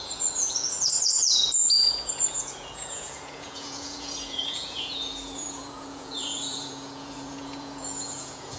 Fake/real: fake